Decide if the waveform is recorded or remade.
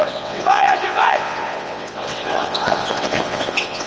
remade